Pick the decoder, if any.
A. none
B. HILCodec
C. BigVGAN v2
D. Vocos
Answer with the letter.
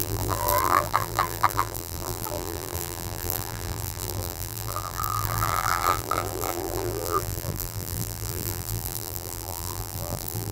C